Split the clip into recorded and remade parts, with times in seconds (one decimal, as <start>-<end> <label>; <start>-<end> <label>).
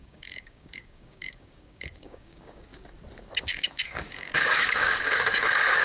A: 0.0-2.7 remade; 2.7-3.4 recorded; 3.4-5.8 remade